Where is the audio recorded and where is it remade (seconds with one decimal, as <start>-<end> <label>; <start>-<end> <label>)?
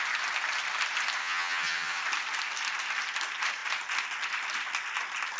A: 0.0-1.2 recorded; 1.2-2.0 remade; 2.0-5.4 recorded